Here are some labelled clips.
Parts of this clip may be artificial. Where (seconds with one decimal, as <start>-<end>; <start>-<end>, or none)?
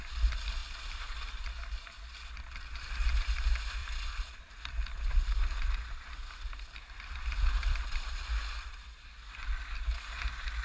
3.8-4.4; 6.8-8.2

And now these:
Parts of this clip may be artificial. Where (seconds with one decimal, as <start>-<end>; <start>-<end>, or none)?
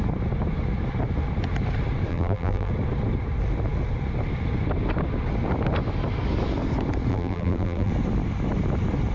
2.1-2.7; 7.1-7.9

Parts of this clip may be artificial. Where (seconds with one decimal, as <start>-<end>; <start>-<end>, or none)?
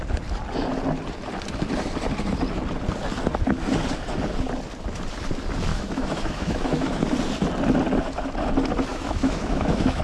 5.7-7.0; 8.9-10.0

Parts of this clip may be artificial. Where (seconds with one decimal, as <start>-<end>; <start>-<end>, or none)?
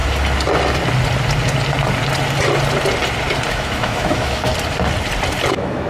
3.5-4.5; 5.5-5.9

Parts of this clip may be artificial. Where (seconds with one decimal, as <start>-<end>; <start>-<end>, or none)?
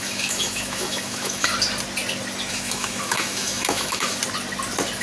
0.0-1.5; 2.5-4.2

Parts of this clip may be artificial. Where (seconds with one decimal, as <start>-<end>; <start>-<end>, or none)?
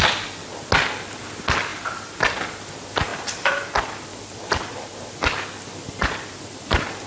none